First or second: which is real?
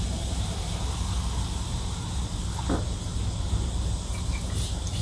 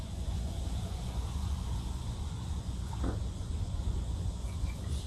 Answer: first